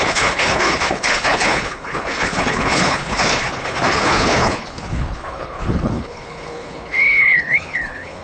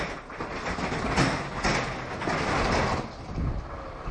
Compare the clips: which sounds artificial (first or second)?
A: first